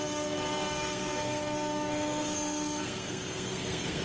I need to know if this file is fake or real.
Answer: fake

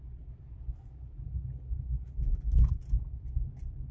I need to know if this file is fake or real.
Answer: real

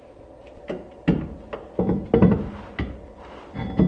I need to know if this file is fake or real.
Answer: real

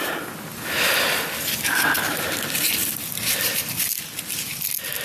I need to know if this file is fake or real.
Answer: real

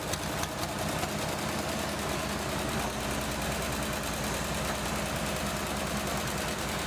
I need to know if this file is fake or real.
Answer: real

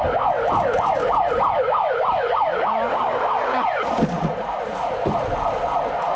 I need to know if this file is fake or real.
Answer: real